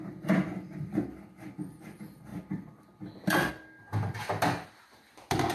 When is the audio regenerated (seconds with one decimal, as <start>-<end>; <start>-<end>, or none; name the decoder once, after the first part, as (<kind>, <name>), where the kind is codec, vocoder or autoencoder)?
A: 2.3-3.5 (vocoder, BigVGAN v2)